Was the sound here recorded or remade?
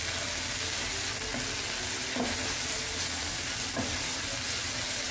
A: recorded